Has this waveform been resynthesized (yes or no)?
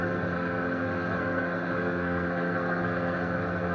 yes